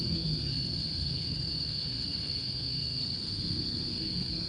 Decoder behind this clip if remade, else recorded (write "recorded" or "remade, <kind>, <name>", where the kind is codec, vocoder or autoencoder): remade, codec, SNAC